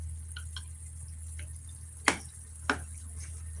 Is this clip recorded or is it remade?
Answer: recorded